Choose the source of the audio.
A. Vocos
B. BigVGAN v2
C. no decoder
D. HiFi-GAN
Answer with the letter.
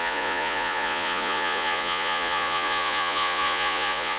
A